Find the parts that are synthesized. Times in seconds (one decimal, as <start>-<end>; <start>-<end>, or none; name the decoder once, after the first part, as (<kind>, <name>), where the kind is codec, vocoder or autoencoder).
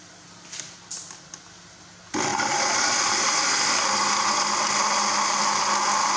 none